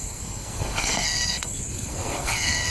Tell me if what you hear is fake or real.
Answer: fake